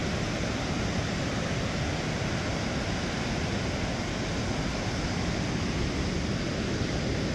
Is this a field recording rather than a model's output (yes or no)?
yes